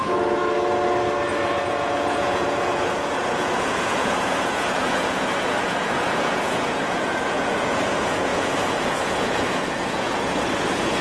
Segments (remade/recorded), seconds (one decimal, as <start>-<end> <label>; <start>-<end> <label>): 0.0-0.4 remade; 0.4-1.3 recorded; 1.3-11.0 remade